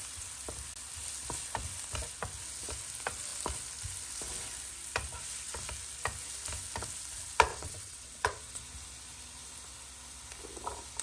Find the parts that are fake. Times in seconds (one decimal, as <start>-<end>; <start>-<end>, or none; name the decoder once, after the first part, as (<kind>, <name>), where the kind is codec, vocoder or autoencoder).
7.5-8.6 (vocoder, WaveNeXt)